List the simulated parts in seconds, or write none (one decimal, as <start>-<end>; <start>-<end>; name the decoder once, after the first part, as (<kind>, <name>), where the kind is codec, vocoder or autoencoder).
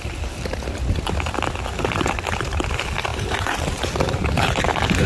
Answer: 3.1-3.8 (vocoder, BigVGAN v2)